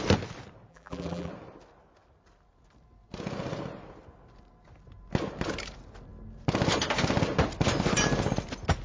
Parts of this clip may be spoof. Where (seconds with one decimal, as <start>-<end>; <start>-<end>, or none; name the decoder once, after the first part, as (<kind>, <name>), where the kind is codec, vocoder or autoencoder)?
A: 0.7-1.3 (vocoder, BigVGAN v2)

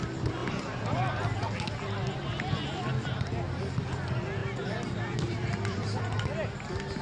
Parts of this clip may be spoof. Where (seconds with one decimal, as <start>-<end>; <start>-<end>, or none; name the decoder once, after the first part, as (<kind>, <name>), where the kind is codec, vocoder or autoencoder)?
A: 0.4-1.0 (vocoder, BigVGAN v2); 4.4-6.0

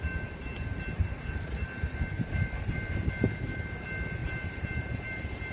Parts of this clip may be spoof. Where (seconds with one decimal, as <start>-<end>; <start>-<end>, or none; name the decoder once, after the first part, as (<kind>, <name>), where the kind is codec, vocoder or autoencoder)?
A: 4.2-5.5 (vocoder, BigVGAN v2)

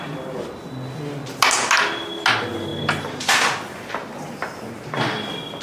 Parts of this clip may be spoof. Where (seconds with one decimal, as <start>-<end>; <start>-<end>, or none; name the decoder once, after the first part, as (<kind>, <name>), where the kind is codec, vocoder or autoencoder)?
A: none

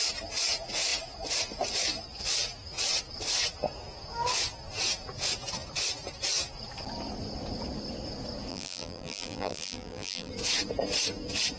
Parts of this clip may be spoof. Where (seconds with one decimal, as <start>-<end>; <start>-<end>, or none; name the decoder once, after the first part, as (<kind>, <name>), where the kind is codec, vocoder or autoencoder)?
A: 8.5-10.3 (vocoder, BigVGAN v2)

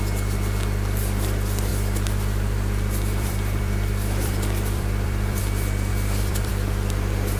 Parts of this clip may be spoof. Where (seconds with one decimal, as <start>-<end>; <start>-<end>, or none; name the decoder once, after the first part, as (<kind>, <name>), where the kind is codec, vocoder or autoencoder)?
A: 1.7-5.4 (vocoder, BigVGAN v2); 5.9-6.5